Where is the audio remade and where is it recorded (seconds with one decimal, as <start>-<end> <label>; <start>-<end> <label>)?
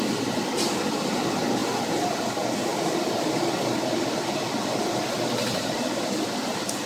0.0-2.7 recorded; 2.7-6.9 remade